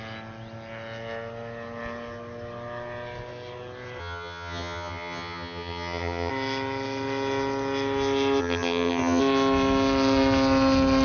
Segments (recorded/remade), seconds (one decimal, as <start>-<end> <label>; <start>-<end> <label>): 0.0-4.0 recorded; 4.0-6.3 remade; 6.3-8.4 recorded; 8.4-9.2 remade; 9.2-11.0 recorded